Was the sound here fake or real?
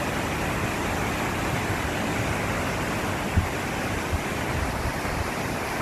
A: real